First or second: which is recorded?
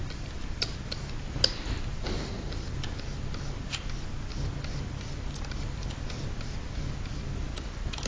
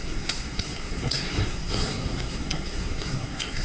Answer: first